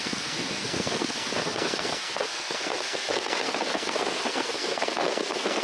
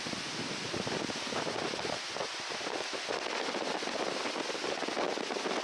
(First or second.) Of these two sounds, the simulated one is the first